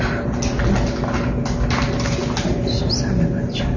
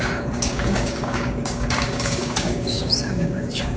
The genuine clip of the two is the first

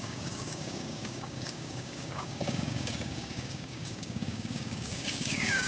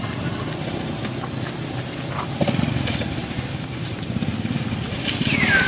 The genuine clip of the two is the second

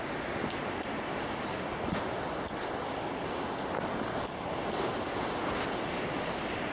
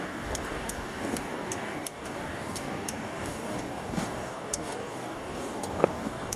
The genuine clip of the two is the first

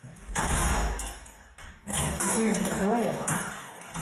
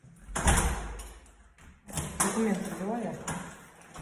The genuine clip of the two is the second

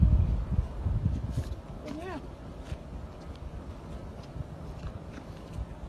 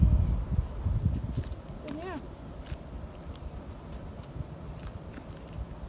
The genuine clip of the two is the second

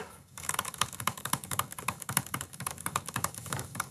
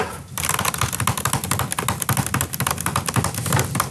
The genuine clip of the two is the second